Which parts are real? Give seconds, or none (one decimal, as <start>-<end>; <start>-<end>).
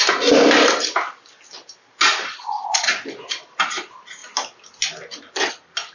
0.0-2.2; 2.9-5.9